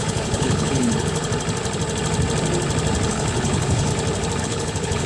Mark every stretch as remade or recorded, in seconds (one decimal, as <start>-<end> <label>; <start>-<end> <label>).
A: 0.0-1.3 remade; 1.3-3.1 recorded; 3.1-3.9 remade; 3.9-4.4 recorded; 4.4-5.1 remade